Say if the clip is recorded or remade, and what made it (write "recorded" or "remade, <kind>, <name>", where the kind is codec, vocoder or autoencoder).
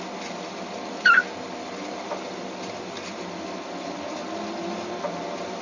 recorded